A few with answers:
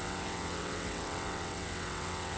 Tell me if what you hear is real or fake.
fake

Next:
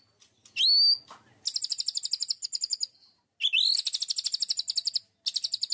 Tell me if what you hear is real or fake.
real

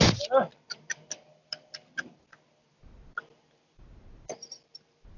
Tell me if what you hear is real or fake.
real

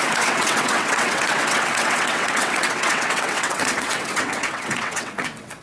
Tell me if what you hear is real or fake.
fake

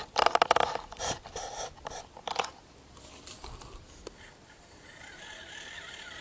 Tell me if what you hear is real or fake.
real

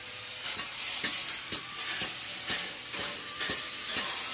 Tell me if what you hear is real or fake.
fake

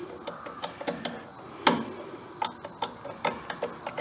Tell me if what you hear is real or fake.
real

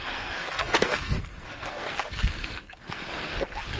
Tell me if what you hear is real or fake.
fake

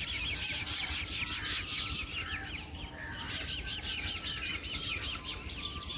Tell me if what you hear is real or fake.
real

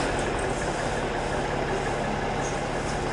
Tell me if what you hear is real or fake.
real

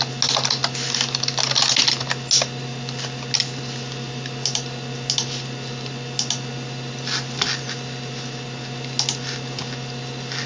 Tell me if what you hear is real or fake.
real